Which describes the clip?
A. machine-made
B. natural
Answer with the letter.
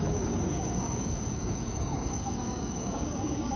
A